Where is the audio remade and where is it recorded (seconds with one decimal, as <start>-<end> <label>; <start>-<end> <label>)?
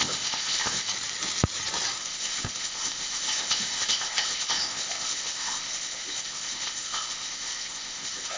0.0-0.9 remade; 0.9-2.0 recorded; 2.0-8.4 remade